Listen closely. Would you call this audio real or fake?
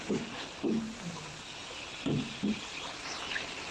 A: real